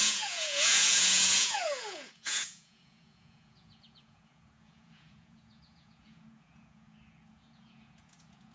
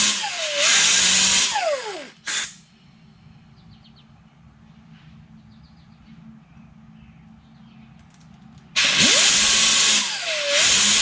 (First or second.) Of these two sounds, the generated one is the first